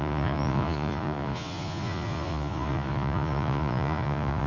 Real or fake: fake